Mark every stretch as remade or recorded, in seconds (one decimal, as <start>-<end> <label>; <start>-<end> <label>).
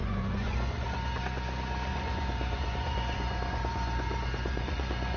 0.0-1.2 remade; 1.2-1.9 recorded; 1.9-5.2 remade